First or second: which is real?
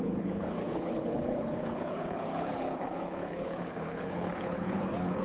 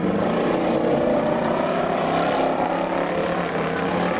second